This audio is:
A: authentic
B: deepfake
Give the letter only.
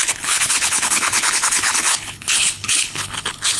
B